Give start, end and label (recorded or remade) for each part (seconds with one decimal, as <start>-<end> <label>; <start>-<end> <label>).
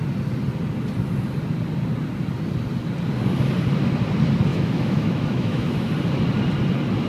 0.0-4.5 recorded; 4.5-5.9 remade; 5.9-7.1 recorded